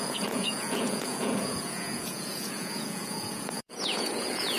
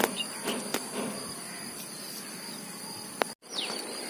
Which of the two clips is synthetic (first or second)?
first